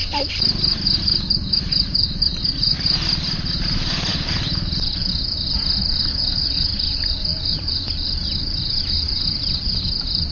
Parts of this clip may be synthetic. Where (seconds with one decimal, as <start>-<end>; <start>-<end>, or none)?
1.0-10.3